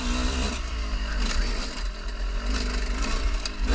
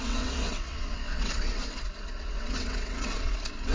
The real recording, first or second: first